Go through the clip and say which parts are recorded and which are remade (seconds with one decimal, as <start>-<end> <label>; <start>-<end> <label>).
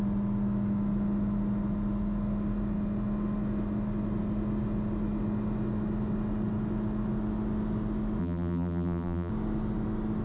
0.0-8.2 recorded; 8.2-9.3 remade; 9.3-10.2 recorded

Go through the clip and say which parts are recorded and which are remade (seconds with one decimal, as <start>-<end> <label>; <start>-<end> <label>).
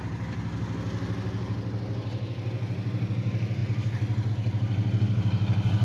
0.0-5.8 recorded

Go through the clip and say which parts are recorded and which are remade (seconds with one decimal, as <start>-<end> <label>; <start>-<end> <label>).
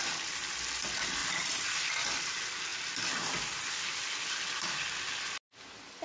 0.0-1.2 recorded; 1.2-1.9 remade; 1.9-6.0 recorded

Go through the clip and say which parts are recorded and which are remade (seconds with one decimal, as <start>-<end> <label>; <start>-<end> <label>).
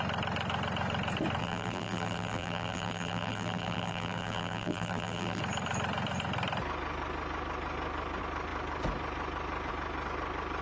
0.0-1.4 recorded; 1.4-5.4 remade; 5.4-10.6 recorded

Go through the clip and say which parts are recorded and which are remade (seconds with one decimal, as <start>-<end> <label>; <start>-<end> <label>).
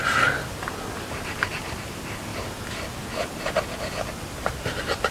0.0-1.5 remade; 1.5-2.3 recorded; 2.3-3.7 remade; 3.7-5.1 recorded